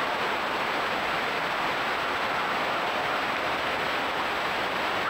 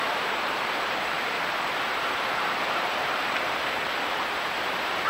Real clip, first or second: first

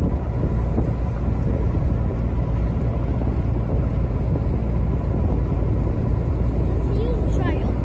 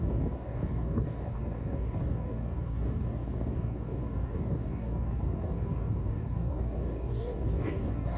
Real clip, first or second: first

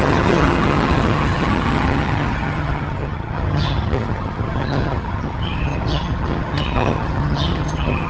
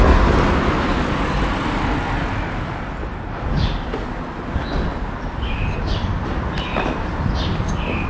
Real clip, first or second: second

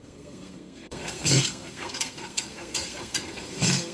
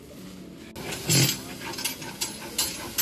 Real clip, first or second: second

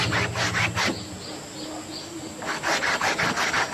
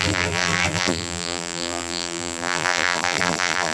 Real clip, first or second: first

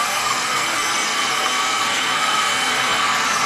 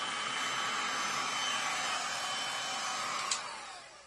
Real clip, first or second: second